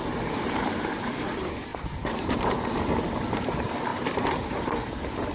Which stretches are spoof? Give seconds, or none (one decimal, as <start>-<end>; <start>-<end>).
1.7-2.9; 3.9-4.6